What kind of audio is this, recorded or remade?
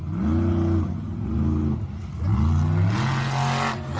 recorded